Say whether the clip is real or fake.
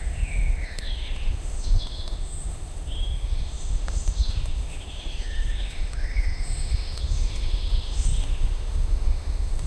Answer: fake